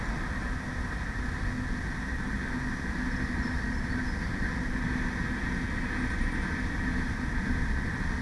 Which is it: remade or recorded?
recorded